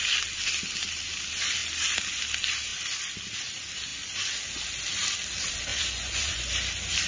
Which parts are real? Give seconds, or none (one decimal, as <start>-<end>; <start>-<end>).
0.0-5.7; 6.5-7.1